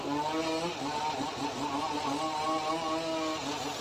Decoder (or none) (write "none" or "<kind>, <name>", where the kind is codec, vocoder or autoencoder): none